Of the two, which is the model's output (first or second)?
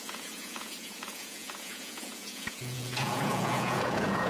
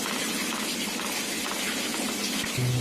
first